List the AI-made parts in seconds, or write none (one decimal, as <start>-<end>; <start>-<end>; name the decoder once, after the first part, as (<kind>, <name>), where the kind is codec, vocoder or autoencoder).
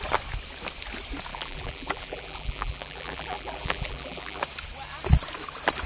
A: 1.3-4.4 (vocoder, BigVGAN v2)